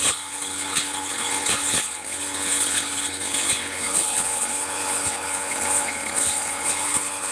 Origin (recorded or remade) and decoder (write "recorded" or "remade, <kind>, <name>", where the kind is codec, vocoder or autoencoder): remade, codec, HILCodec